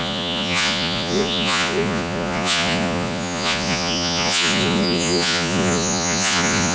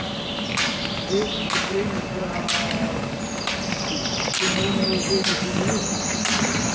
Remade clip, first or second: first